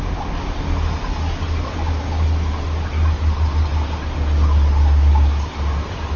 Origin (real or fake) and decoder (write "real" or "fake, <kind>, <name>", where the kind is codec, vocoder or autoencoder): real